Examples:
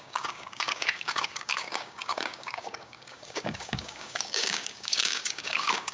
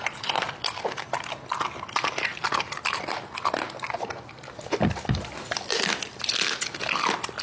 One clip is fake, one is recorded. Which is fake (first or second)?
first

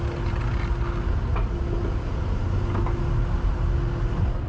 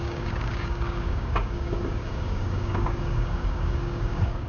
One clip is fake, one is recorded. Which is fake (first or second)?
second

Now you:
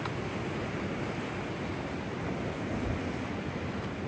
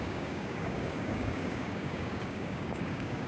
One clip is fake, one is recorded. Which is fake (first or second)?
second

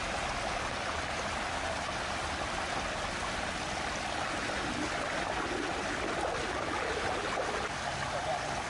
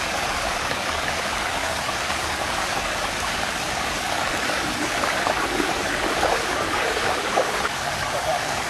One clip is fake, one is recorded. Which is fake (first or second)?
second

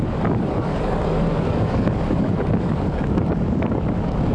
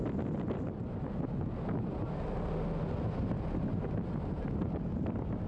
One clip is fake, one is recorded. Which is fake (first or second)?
first